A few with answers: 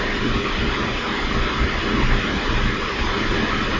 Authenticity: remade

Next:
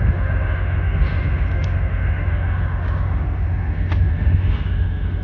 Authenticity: remade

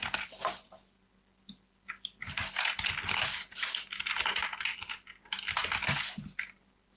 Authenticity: recorded